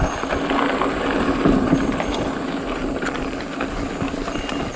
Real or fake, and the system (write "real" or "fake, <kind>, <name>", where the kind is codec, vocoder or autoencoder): real